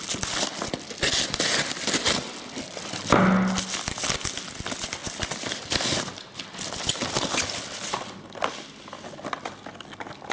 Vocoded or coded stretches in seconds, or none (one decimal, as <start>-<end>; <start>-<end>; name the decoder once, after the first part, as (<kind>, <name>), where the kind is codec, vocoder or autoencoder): none